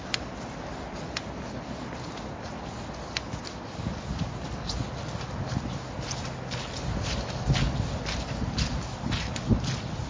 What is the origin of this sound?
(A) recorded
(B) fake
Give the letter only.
A